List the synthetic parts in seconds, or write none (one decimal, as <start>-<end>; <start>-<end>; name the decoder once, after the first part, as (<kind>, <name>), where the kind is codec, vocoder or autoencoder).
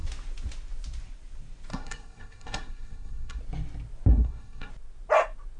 1.7-3.4 (codec, SNAC); 4.1-4.7